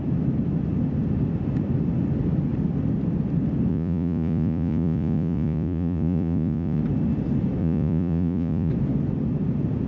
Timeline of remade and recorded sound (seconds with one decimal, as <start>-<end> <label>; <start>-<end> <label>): 0.0-3.7 recorded; 3.7-6.8 remade; 6.8-7.6 recorded; 7.6-8.7 remade; 8.7-9.9 recorded